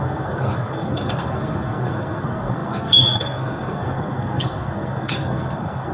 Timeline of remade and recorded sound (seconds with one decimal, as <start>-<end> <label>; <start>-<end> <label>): 0.0-5.9 remade